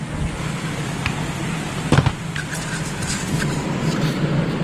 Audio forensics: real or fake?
real